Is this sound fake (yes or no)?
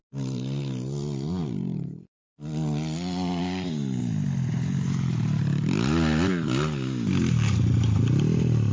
no